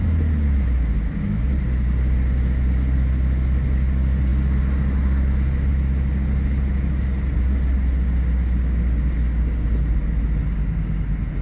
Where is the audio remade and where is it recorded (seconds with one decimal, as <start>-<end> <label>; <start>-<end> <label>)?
0.0-11.4 recorded